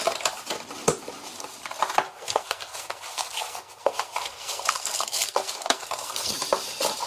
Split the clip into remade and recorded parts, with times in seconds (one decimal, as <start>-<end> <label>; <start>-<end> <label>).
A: 0.0-2.1 recorded; 2.1-6.3 remade; 6.3-7.1 recorded